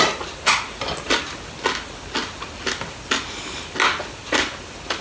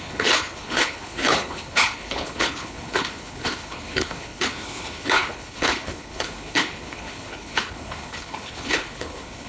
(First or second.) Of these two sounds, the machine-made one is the second